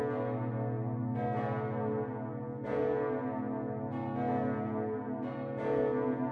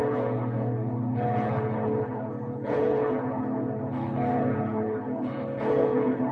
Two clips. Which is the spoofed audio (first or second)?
second